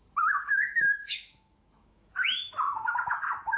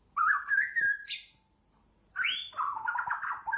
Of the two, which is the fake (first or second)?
first